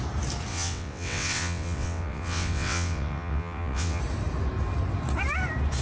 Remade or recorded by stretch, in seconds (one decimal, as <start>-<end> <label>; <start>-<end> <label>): 0.0-0.5 recorded; 0.5-4.0 remade; 4.0-5.8 recorded